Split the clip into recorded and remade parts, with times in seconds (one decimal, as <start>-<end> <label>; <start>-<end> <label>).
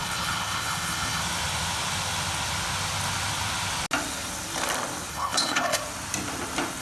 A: 0.0-1.2 remade; 1.2-5.1 recorded; 5.1-5.8 remade; 5.8-6.8 recorded